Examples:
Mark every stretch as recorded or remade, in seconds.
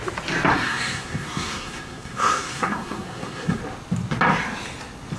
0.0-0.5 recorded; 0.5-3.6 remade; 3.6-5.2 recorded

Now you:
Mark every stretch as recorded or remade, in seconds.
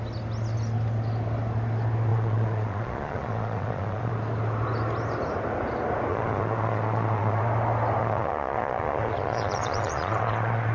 0.0-2.1 recorded; 2.1-4.1 remade; 4.1-6.1 recorded; 6.1-7.4 remade; 7.4-8.0 recorded; 8.0-10.7 remade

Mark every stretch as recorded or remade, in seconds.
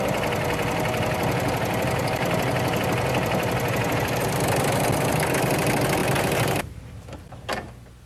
0.0-6.0 recorded; 6.0-7.0 remade; 7.0-8.1 recorded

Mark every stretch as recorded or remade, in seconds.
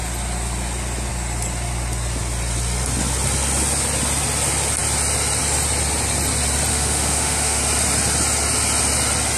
0.0-6.7 recorded; 6.7-7.6 remade; 7.6-9.4 recorded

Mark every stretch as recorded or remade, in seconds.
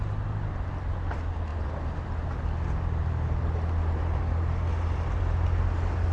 0.0-6.1 recorded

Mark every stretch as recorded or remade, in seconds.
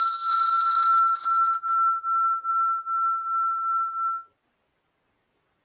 0.0-5.6 recorded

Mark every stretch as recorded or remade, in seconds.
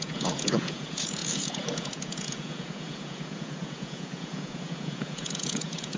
0.0-6.0 remade